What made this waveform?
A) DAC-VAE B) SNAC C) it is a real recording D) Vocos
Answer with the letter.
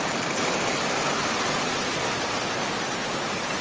C